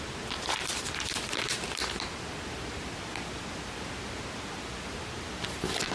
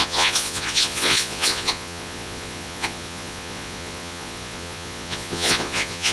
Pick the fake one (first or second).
second